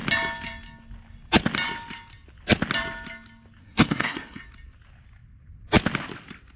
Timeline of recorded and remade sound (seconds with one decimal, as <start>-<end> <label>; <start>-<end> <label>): 0.0-3.6 recorded; 3.6-4.4 remade; 4.4-6.6 recorded